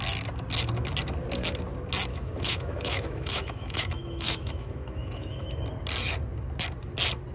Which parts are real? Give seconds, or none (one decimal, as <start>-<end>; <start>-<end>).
0.0-2.1; 5.6-7.3